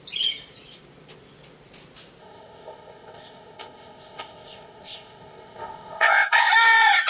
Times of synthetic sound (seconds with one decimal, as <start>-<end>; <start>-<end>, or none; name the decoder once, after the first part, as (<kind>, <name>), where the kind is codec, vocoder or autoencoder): 2.2-6.5 (codec, ZipCodec)